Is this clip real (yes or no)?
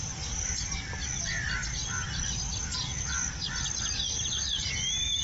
yes